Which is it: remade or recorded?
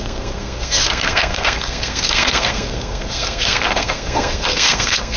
remade